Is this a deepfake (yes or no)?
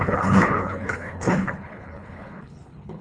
yes